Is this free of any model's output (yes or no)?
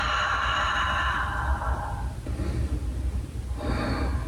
yes